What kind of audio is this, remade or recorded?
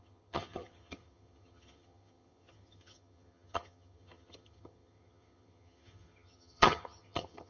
remade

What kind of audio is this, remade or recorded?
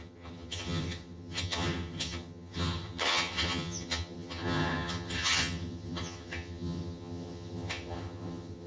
remade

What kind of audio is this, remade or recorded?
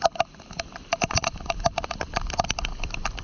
recorded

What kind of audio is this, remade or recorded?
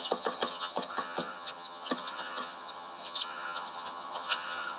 remade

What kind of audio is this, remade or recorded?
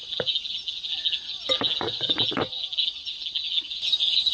recorded